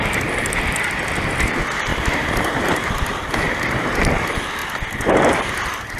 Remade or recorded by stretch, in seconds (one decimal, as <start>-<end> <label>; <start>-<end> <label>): 0.0-1.9 recorded; 1.9-2.9 remade; 2.9-6.0 recorded